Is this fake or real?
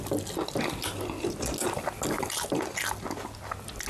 real